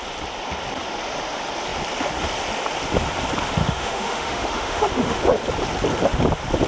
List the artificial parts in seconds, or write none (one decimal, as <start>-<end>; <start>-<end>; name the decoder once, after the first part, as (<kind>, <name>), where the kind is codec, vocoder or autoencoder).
3.6-5.2 (autoencoder, DAC-VAE)